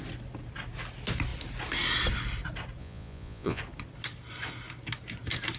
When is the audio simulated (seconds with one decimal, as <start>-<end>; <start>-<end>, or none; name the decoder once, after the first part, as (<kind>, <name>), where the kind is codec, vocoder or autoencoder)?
2.8-3.6 (vocoder, Vocos)